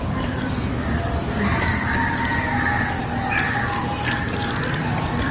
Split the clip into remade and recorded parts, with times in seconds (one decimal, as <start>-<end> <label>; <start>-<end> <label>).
0.0-0.6 remade; 0.6-1.2 recorded; 1.2-2.0 remade; 2.0-3.0 recorded; 3.0-5.3 remade